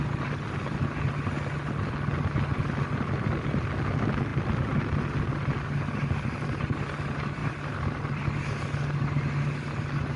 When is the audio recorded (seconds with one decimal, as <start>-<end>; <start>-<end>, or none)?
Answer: 0.0-10.2